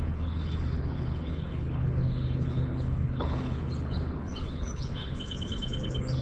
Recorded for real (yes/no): no